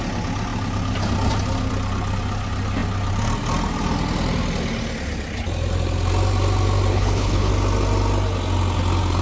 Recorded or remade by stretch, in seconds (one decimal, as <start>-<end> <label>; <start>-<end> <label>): 0.0-6.9 recorded; 6.9-7.5 remade; 7.5-9.2 recorded